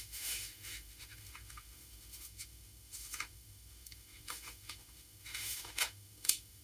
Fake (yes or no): yes